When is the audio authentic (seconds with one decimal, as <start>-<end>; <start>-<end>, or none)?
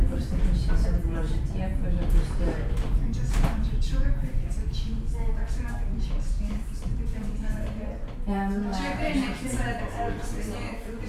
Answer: 8.7-9.4